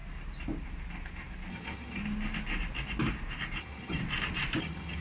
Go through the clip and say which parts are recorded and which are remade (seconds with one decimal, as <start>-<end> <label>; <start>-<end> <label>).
0.0-1.5 recorded; 1.5-2.0 remade; 2.0-3.6 recorded; 3.6-4.0 remade; 4.0-4.6 recorded; 4.6-5.0 remade